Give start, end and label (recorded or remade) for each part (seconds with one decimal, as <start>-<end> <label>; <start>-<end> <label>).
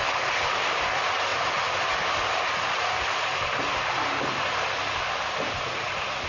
0.0-6.3 recorded